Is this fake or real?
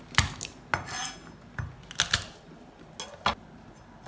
real